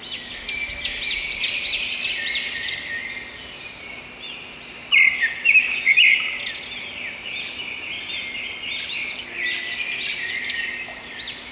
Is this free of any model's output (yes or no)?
yes